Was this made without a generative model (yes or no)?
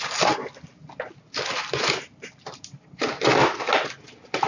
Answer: yes